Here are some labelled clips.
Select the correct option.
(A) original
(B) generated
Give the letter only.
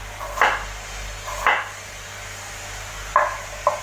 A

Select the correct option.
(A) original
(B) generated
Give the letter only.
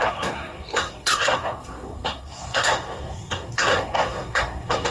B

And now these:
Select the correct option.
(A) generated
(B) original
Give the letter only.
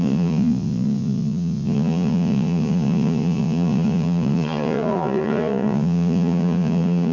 A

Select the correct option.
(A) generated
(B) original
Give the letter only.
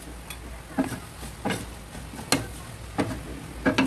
B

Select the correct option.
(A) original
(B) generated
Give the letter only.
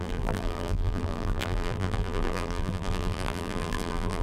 B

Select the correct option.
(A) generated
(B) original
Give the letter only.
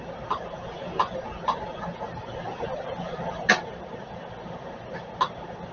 B